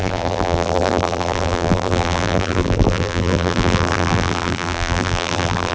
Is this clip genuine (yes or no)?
no